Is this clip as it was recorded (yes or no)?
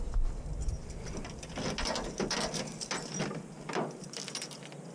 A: yes